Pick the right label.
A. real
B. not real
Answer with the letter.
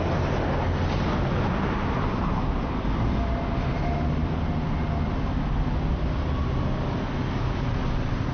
A